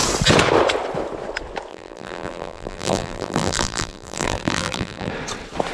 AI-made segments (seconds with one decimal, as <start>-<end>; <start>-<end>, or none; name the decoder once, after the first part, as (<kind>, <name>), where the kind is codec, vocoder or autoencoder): 1.7-5.1 (vocoder, BigVGAN v2)